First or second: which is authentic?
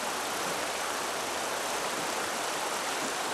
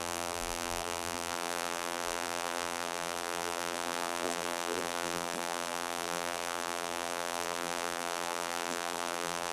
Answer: first